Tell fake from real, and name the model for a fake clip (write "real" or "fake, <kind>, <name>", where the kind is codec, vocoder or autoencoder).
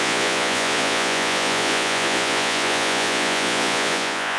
fake, vocoder, Vocos